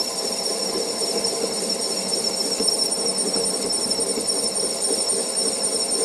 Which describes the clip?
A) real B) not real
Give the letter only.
A